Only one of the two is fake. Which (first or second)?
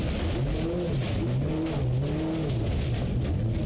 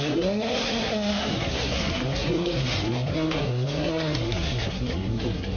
second